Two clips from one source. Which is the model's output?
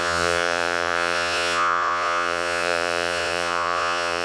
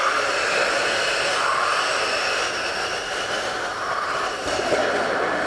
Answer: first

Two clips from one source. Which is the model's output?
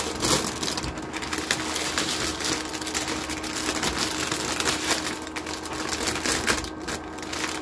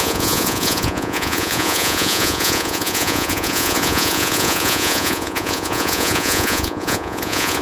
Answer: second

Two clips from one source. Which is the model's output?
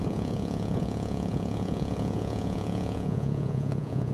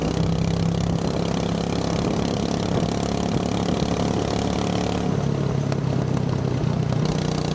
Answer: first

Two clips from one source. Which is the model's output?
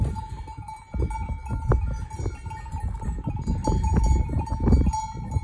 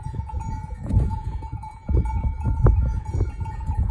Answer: second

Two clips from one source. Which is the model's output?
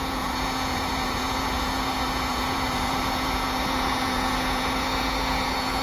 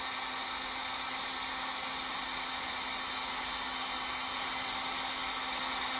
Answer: first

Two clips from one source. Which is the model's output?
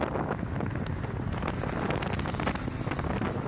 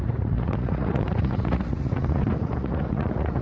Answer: second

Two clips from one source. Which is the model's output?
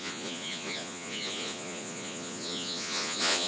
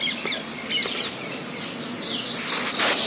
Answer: first